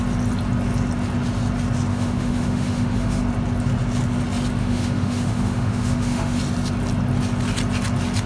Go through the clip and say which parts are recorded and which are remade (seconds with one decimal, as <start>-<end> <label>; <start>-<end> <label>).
0.0-1.9 recorded; 1.9-3.2 remade; 3.2-4.6 recorded; 4.6-6.4 remade; 6.4-8.3 recorded

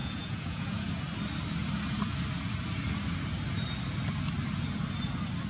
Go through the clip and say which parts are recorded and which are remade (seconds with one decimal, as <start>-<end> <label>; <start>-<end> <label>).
0.0-0.9 remade; 0.9-5.5 recorded

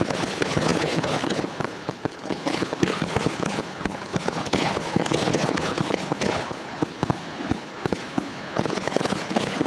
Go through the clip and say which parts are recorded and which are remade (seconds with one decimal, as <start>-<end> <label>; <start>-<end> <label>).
0.0-9.7 remade